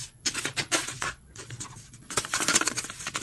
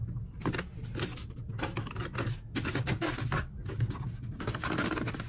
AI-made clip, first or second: first